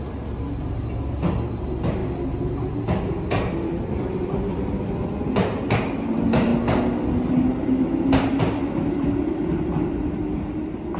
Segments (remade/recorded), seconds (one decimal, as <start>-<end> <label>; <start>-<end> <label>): 0.0-2.0 remade; 2.0-3.2 recorded; 3.2-6.5 remade; 6.5-7.1 recorded; 7.1-11.0 remade